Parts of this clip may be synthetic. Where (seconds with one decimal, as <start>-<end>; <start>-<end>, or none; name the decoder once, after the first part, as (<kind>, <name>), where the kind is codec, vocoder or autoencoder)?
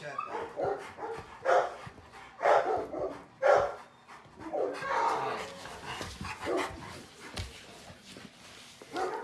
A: 1.8-2.6 (vocoder, Vocos)